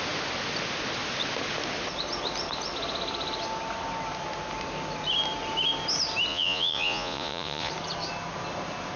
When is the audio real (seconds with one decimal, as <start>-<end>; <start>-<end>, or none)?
0.0-6.3; 7.7-9.0